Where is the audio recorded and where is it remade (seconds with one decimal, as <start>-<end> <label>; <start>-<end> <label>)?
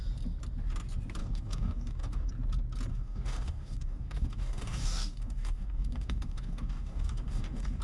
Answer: 0.0-1.2 recorded; 1.2-2.3 remade; 2.3-2.9 recorded; 2.9-7.8 remade